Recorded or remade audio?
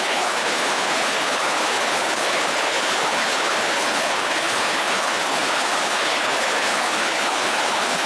remade